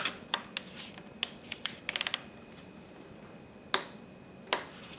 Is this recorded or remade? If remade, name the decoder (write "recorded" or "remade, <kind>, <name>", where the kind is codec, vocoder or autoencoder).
recorded